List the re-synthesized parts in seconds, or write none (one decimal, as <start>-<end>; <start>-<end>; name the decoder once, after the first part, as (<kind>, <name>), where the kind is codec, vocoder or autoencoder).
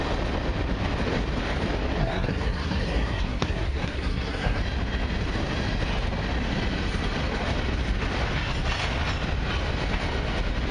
2.0-4.6 (codec, SNAC)